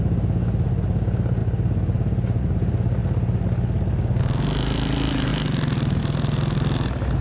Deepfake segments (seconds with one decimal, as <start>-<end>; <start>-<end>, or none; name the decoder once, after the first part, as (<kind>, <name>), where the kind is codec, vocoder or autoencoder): none